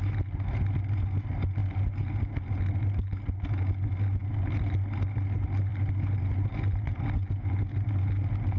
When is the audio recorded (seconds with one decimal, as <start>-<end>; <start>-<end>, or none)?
0.0-8.6